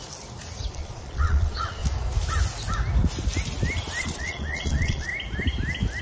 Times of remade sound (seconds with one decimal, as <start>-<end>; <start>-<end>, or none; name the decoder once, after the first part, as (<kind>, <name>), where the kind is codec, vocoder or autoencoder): 0.7-1.8 (vocoder, Vocos); 4.0-5.1